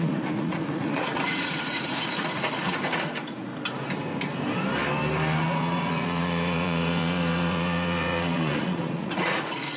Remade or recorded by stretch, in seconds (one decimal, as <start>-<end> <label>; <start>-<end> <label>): 0.0-3.5 remade; 3.5-5.4 recorded; 5.4-9.8 remade